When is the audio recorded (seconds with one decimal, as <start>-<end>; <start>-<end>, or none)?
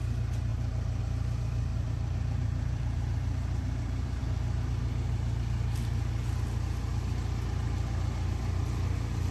0.0-0.5; 1.0-1.7; 4.2-9.3